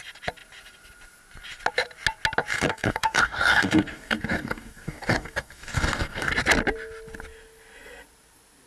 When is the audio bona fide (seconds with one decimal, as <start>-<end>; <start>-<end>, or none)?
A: 0.0-2.5; 6.3-8.7